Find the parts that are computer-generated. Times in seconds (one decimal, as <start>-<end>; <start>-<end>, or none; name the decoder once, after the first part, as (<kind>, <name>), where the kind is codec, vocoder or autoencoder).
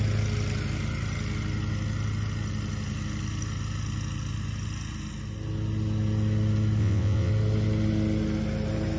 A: 6.8-7.3 (vocoder, WaveNeXt)